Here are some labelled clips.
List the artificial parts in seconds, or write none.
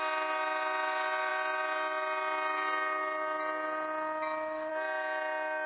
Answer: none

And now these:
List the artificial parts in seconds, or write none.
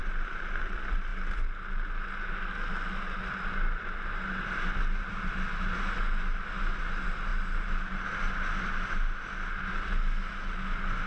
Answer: none